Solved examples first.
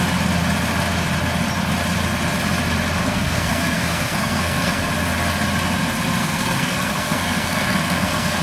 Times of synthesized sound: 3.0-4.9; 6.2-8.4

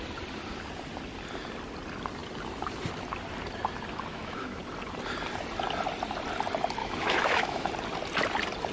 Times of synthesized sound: 4.1-4.6; 6.8-7.7

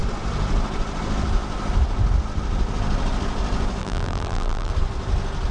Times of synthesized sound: 3.8-4.7

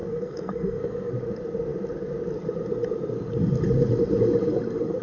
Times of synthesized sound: 0.0-1.1

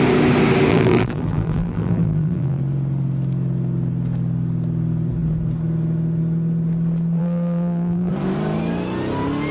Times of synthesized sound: 0.7-2.6; 7.2-8.1

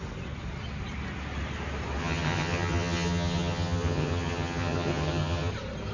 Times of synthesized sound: 2.0-5.5

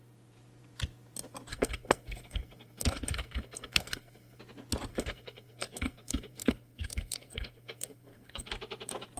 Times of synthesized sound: 1.5-4.4; 4.9-8.5

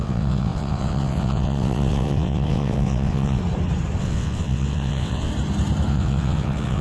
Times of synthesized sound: 0.0-3.4; 4.0-5.3; 5.9-6.8